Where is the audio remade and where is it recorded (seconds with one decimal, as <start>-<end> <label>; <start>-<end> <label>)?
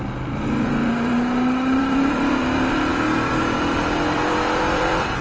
0.0-1.1 remade; 1.1-1.8 recorded; 1.8-5.2 remade